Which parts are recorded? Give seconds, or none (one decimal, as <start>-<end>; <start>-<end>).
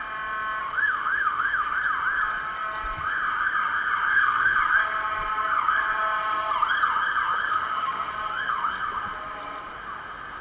0.0-0.6; 1.8-4.1; 4.6-7.5; 8.1-10.4